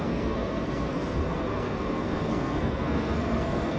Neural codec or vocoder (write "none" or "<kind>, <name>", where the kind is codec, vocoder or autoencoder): codec, SNAC